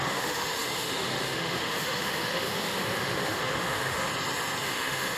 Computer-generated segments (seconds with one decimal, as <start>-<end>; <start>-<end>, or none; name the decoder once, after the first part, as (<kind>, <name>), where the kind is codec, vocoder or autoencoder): 0.0-4.1 (autoencoder, DAC-VAE); 4.6-5.2